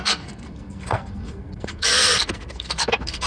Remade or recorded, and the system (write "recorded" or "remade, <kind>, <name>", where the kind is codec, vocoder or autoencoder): remade, codec, SNAC